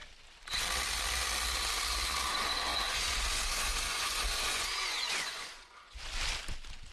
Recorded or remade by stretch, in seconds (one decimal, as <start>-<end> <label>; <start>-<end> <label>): 0.0-2.7 recorded; 2.7-6.0 remade; 6.0-6.9 recorded